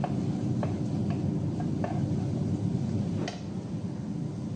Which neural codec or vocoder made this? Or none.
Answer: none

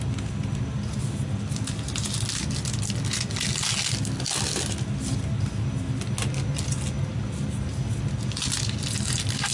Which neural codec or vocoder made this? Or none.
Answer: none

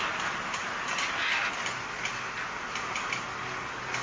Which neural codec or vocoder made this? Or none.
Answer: none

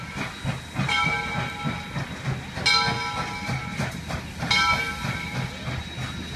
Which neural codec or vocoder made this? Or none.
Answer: none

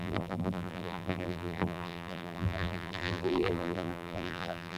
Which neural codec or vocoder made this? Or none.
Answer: vocoder, BigVGAN v2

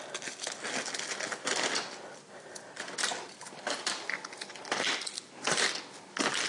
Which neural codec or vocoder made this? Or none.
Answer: none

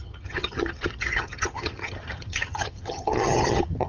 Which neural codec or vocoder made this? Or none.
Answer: vocoder, HiFi-GAN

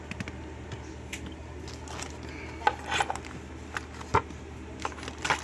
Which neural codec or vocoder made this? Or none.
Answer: none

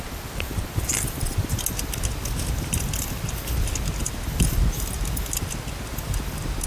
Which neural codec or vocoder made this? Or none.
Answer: none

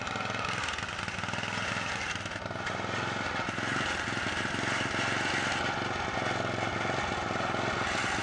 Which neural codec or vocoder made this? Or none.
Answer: none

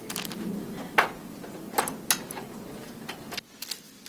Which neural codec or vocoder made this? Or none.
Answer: none